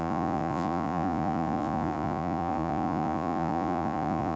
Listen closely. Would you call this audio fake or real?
fake